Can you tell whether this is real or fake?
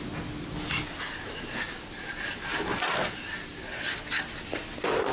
real